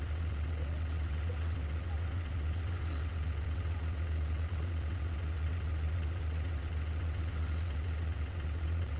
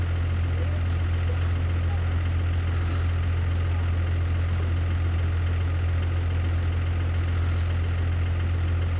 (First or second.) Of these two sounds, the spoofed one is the first